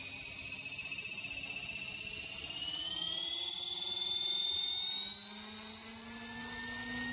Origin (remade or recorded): recorded